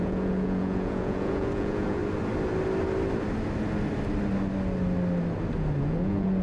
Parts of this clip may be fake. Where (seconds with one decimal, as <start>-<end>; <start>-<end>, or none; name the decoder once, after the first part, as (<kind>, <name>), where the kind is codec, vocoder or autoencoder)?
0.0-2.0 (vocoder, Vocos); 5.8-6.4